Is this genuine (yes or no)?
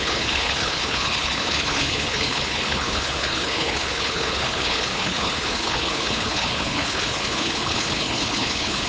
no